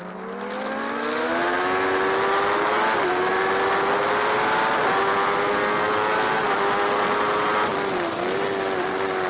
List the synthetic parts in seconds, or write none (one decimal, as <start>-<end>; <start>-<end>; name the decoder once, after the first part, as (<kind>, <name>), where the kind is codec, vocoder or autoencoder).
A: none